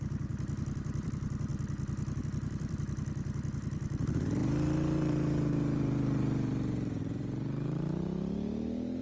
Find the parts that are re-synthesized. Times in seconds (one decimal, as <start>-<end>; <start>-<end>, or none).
0.0-1.5; 2.2-9.0